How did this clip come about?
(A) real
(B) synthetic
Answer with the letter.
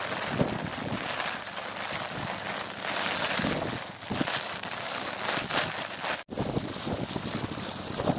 A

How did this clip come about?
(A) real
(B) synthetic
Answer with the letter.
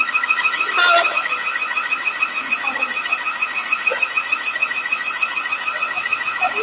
A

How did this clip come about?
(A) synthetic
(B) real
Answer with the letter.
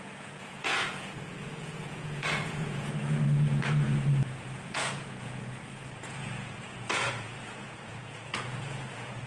A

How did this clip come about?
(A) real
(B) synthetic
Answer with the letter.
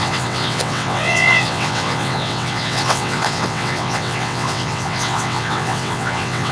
B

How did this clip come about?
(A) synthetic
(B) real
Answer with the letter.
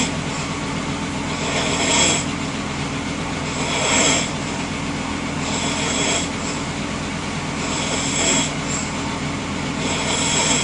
A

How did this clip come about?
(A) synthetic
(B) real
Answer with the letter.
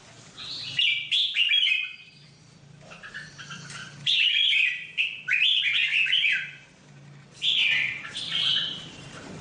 A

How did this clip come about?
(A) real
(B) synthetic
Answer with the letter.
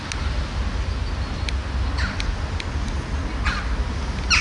A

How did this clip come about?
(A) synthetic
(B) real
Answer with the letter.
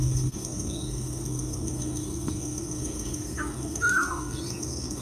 A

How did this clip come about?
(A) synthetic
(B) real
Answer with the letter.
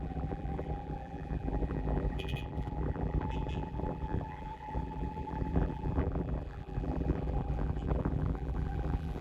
A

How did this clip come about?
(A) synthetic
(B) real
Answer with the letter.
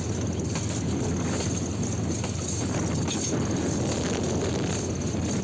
B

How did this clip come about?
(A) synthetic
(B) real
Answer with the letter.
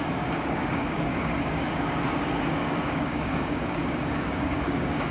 A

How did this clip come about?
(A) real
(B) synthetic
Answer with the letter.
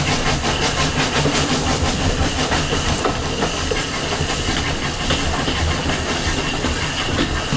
A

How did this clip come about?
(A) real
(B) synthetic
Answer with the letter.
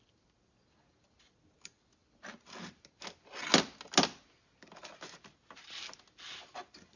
A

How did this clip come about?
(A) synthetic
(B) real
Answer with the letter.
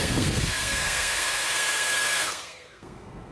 A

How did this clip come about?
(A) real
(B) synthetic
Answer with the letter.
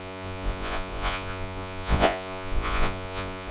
B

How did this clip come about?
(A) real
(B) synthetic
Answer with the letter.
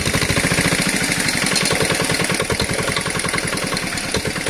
A